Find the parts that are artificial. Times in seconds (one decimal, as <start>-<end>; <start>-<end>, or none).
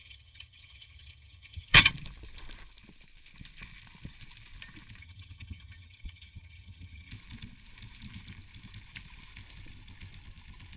0.0-1.9; 5.0-7.1